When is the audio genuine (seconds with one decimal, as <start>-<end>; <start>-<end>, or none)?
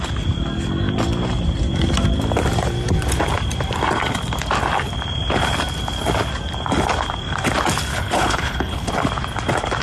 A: 0.0-7.9; 8.9-9.8